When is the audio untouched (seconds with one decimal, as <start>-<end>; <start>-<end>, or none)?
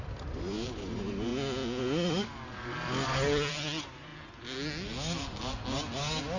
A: 1.3-3.5; 4.1-6.4